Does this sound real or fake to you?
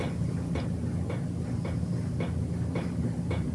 real